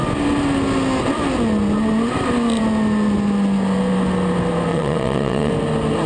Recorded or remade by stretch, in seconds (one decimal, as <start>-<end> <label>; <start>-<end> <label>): 0.0-4.7 recorded; 4.7-5.5 remade; 5.5-6.1 recorded